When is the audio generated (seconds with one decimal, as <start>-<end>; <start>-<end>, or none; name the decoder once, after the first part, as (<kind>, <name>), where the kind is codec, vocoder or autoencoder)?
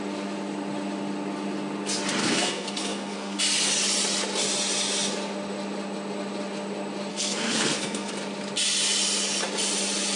2.2-3.4 (codec, SNAC); 7.1-8.1